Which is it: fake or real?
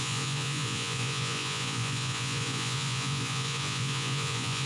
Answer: fake